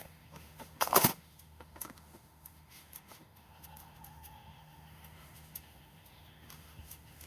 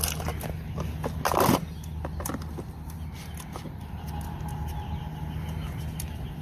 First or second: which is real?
second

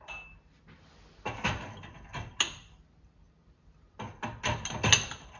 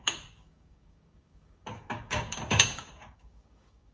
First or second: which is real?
first